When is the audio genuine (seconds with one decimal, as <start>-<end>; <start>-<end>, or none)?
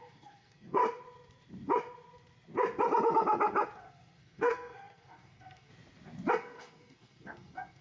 0.8-3.8; 5.7-6.3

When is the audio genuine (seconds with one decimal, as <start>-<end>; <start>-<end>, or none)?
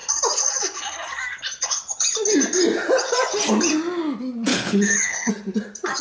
0.0-4.5; 5.3-6.0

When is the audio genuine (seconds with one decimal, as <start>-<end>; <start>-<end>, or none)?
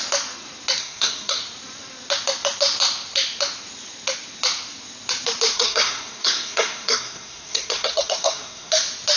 0.0-0.8; 1.4-5.5; 8.7-9.2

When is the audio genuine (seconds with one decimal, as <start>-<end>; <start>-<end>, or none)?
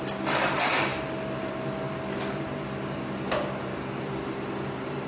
0.0-5.1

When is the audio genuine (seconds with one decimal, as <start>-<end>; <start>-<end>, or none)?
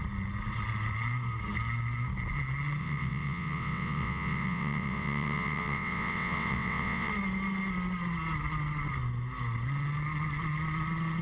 0.0-2.8; 7.1-11.2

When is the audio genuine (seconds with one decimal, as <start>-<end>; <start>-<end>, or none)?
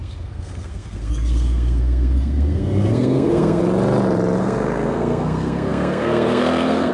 3.6-4.4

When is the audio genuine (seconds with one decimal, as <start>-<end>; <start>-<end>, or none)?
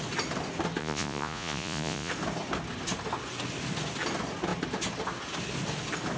0.0-0.8; 2.1-6.2